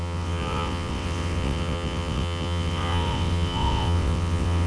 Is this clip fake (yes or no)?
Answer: yes